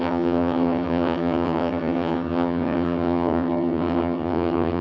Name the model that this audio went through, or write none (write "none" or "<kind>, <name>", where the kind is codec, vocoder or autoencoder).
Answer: vocoder, HiFi-GAN